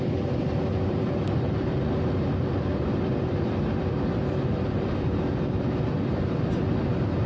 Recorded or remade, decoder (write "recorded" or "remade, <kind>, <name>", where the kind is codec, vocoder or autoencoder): remade, vocoder, BigVGAN v2